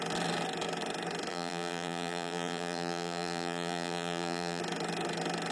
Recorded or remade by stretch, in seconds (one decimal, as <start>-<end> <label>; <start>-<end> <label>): 0.0-1.3 recorded; 1.3-4.6 remade; 4.6-5.5 recorded